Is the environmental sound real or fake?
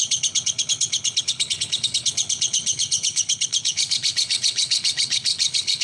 fake